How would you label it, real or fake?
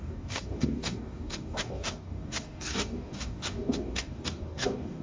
fake